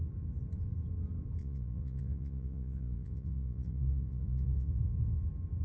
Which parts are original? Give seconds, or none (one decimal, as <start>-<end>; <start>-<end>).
0.0-1.4; 4.8-5.6